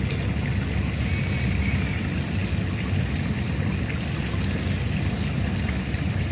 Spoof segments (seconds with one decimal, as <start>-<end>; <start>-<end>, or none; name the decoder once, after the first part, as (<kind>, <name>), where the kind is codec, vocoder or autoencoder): none